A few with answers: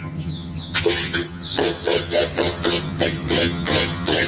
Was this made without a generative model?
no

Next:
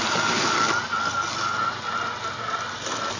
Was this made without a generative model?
yes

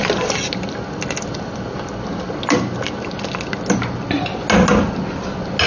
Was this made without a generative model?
yes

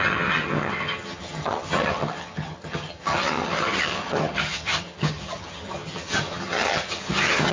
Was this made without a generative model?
no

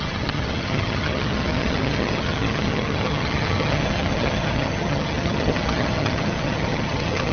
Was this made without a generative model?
no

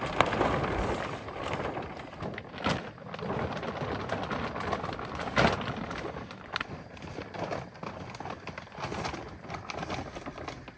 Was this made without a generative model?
yes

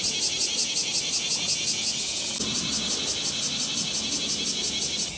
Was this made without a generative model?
yes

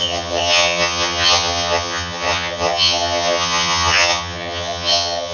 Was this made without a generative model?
no